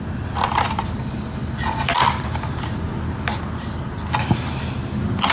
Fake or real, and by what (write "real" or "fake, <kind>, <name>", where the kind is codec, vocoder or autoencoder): real